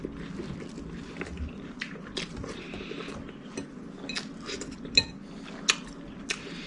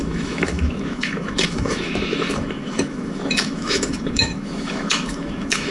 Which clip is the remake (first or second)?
second